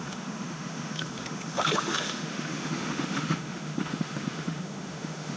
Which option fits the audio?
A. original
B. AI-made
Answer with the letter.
B